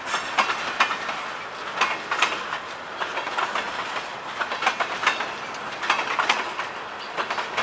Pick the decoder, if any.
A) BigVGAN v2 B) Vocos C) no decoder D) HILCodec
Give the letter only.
C